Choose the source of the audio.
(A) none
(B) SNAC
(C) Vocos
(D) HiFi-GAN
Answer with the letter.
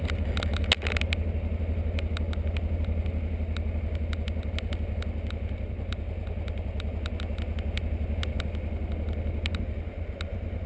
A